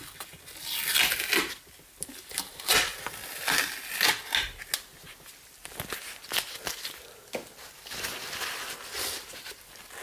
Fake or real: real